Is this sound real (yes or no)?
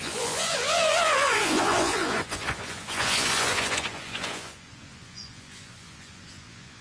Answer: no